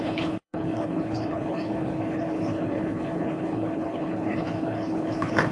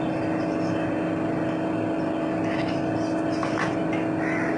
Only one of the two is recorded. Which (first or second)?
second